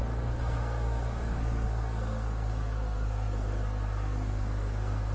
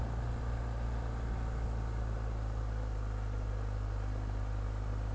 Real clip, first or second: second